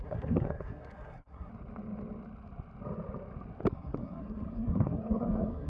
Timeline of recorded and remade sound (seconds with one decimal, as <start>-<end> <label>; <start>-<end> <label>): 0.0-1.5 remade; 1.5-3.7 recorded; 3.7-5.7 remade